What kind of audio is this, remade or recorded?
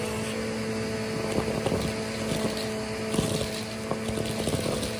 recorded